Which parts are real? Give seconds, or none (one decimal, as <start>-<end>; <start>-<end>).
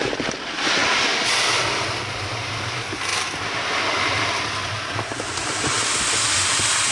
0.0-6.9